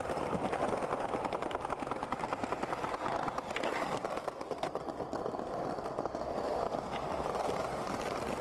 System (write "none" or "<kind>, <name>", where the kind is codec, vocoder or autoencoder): none